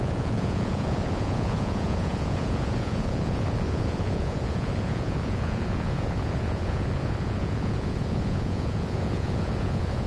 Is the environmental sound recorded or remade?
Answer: remade